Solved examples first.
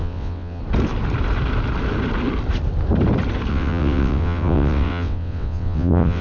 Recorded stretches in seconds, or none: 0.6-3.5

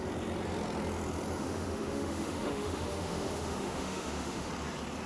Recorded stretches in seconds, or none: 0.0-1.4; 4.5-5.1

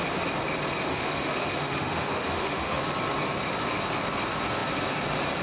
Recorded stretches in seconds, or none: 0.0-0.9; 2.8-5.4

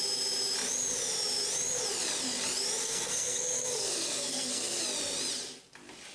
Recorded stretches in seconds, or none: 0.0-2.8; 4.8-6.1

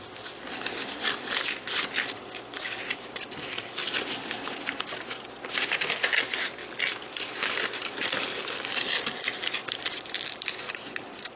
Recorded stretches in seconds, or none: 0.0-6.6; 9.2-9.6; 10.6-11.4

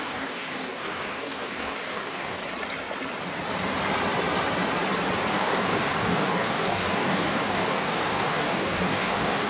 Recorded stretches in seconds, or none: 2.4-5.3

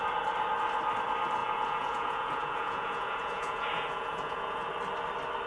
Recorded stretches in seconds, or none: 0.0-1.4; 4.7-5.5

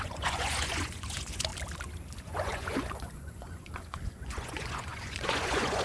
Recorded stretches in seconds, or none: 1.5-2.2